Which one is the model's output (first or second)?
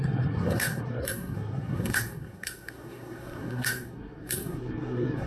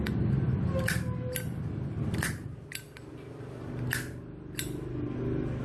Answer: first